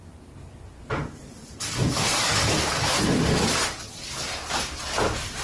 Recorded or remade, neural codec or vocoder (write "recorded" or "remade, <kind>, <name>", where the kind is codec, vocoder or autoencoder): recorded